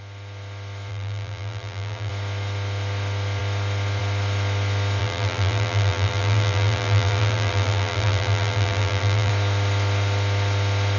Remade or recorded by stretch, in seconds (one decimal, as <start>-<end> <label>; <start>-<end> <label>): 0.0-0.9 recorded; 0.9-2.1 remade; 2.1-5.0 recorded; 5.0-9.3 remade; 9.3-11.0 recorded